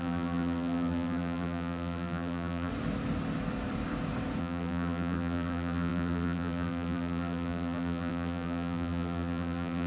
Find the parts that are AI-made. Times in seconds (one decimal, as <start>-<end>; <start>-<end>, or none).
0.0-2.7; 4.4-9.9